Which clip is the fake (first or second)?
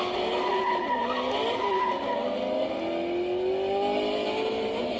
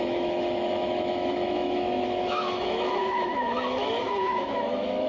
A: second